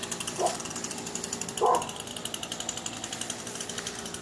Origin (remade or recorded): recorded